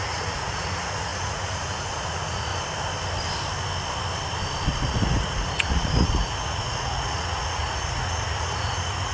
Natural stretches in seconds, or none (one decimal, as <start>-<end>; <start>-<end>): 2.5-4.7